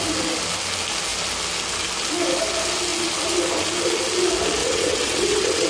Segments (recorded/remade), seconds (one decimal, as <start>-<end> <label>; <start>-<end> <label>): 0.0-4.6 recorded; 4.6-5.7 remade